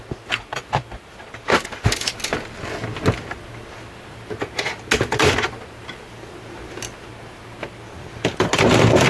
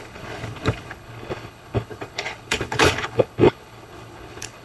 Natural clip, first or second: first